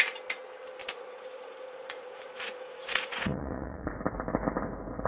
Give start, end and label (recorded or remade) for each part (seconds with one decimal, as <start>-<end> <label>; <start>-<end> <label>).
0.0-0.8 recorded; 0.8-3.9 remade; 3.9-5.1 recorded